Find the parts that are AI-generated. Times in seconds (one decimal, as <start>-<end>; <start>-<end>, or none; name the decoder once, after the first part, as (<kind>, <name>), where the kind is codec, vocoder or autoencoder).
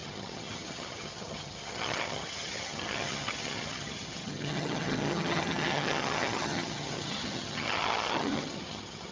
0.0-9.1 (vocoder, HiFi-GAN)